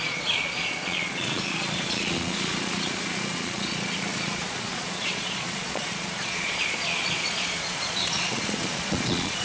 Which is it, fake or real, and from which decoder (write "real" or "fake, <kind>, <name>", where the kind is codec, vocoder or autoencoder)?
fake, vocoder, Vocos